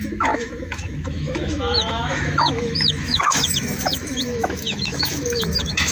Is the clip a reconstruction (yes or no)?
yes